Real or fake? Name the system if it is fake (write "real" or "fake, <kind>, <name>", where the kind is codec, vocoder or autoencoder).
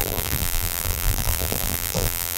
fake, vocoder, BigVGAN v2